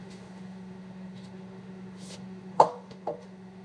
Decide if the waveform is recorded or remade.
remade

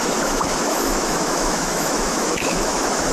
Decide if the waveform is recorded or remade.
remade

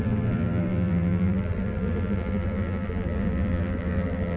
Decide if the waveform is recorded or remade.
remade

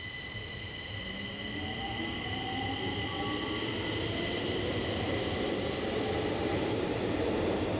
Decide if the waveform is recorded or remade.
recorded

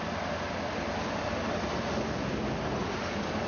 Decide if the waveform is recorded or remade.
recorded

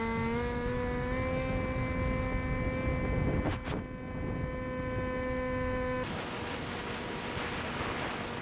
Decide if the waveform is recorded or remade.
recorded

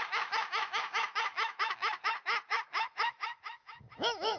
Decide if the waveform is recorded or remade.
remade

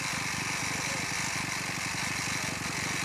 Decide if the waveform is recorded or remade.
recorded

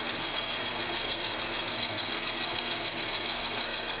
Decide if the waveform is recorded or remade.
remade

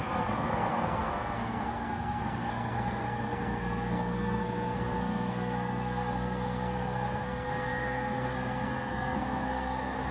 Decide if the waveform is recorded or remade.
remade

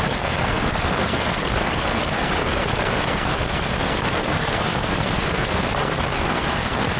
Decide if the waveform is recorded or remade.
remade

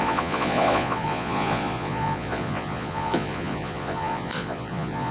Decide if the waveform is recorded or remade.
remade